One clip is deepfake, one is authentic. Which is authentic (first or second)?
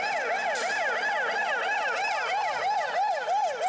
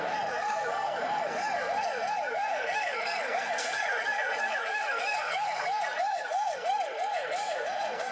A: first